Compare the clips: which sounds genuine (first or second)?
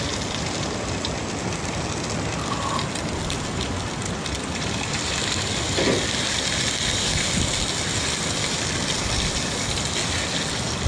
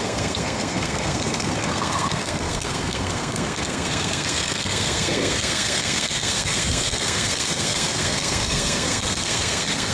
first